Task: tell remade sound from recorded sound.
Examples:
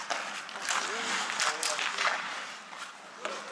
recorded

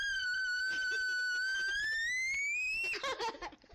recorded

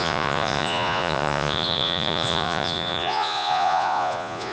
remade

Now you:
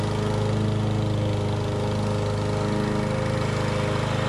recorded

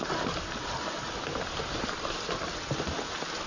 recorded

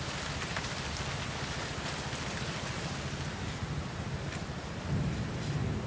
recorded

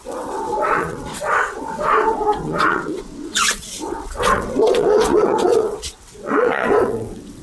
remade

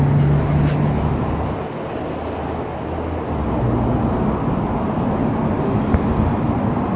recorded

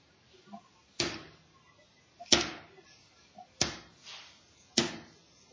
recorded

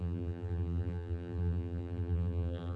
remade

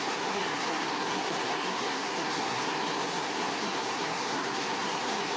remade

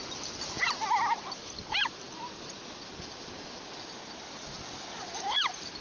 recorded